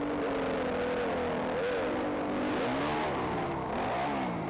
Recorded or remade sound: recorded